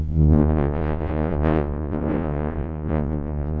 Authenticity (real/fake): fake